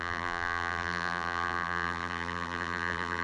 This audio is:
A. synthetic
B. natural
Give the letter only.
A